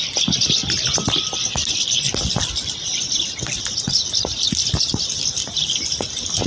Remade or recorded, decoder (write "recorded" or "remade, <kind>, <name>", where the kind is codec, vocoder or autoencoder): recorded